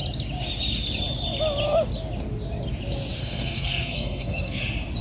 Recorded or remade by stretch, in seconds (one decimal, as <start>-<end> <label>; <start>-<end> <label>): 0.0-3.2 recorded; 3.2-4.6 remade; 4.6-5.0 recorded